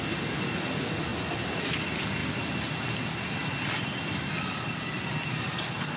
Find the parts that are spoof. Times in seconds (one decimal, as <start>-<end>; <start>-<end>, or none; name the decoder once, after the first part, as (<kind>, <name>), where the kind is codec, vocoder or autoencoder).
none